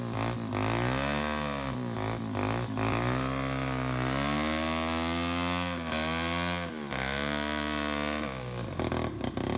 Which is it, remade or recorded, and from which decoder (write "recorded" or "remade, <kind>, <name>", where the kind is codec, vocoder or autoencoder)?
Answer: recorded